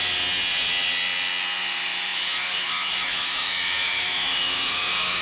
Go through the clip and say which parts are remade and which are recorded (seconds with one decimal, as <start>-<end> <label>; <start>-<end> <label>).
0.0-1.6 recorded; 1.6-5.2 remade